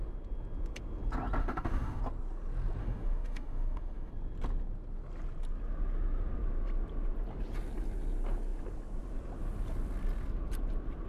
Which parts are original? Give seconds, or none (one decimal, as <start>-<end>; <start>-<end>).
0.0-1.4; 2.0-2.8; 4.1-11.1